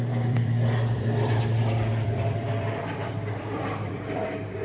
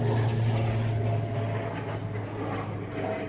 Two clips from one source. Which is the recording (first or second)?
second